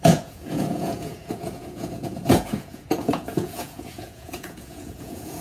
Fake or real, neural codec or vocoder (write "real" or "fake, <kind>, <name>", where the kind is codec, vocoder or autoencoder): fake, vocoder, Vocos